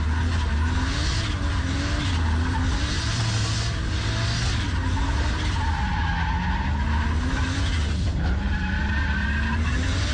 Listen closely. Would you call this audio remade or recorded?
recorded